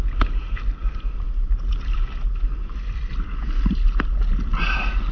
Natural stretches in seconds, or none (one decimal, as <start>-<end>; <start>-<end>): 0.0-5.1

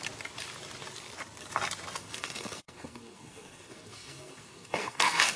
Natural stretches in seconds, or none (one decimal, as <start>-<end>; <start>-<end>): 0.0-2.0

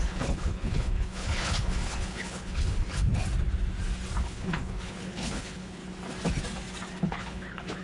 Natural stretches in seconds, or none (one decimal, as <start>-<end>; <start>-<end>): 3.2-4.2; 5.8-7.0

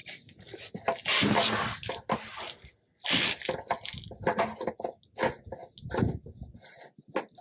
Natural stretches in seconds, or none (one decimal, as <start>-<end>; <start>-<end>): 0.0-7.4